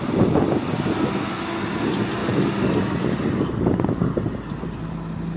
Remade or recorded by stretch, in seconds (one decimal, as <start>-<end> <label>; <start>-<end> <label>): 0.0-5.4 recorded